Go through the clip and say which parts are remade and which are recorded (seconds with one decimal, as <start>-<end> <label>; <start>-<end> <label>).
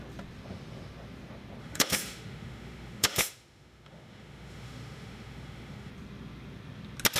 0.0-1.6 recorded; 1.6-5.9 remade; 5.9-7.2 recorded